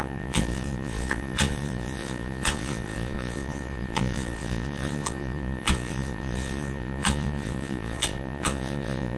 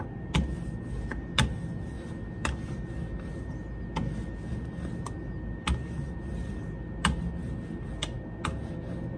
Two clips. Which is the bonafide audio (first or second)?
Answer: second